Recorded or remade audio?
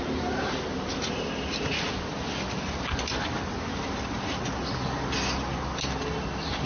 recorded